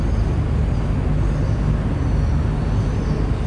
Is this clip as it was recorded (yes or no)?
yes